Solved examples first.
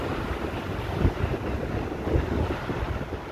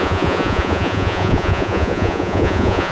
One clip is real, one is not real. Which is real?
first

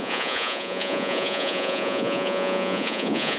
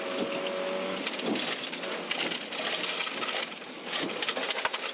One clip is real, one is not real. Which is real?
second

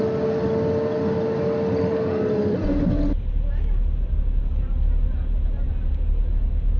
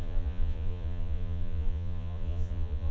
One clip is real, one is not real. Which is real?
first